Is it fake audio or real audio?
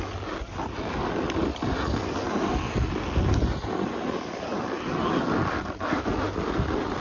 real